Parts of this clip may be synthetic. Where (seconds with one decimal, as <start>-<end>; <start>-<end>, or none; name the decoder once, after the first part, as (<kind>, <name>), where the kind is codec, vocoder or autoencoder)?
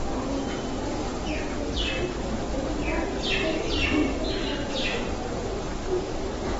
4.0-6.6 (vocoder, BigVGAN v2)